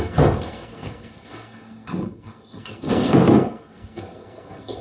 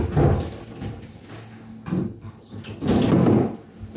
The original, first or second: second